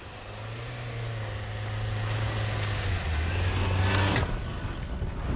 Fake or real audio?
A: real